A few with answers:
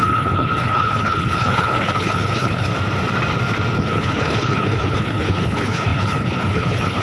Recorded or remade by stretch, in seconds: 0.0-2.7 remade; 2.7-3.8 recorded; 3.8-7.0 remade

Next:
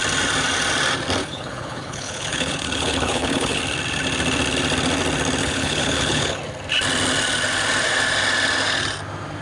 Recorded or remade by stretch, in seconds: 0.0-1.2 recorded; 1.2-3.6 remade; 3.6-5.4 recorded; 5.4-6.4 remade; 6.4-9.4 recorded

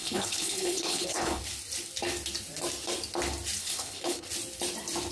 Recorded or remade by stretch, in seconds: 0.0-1.4 remade; 1.4-3.6 recorded; 3.6-4.3 remade; 4.3-5.1 recorded

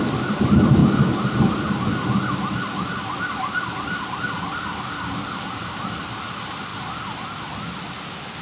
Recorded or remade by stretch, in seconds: 0.0-8.4 recorded

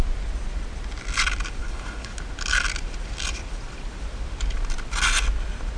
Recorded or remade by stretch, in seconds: 0.0-1.6 recorded; 1.6-2.1 remade; 2.1-5.8 recorded

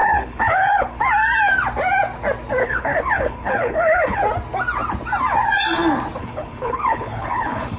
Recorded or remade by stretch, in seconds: 0.0-1.0 remade; 1.0-2.6 recorded; 2.6-4.2 remade; 4.2-6.2 recorded; 6.2-7.8 remade

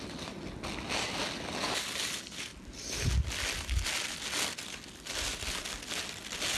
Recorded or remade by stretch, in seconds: 0.0-6.6 recorded

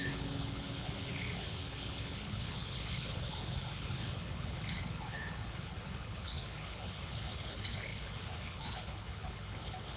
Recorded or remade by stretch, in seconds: 0.0-10.0 remade